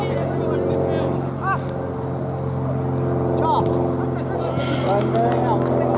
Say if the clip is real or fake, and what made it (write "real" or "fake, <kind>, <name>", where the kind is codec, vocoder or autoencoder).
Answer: real